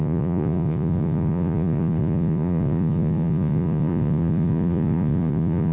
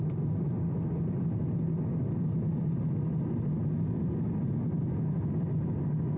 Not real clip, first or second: first